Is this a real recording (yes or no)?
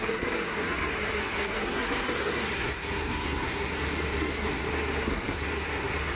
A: no